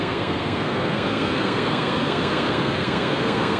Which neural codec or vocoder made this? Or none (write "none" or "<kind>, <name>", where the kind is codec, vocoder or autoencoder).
codec, SNAC